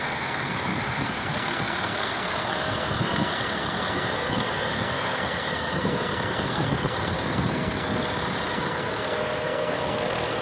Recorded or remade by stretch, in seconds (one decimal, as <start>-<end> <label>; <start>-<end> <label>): 0.0-8.0 remade; 8.0-8.5 recorded; 8.5-10.4 remade